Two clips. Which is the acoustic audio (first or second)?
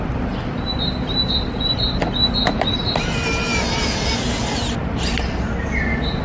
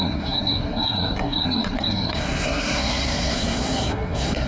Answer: first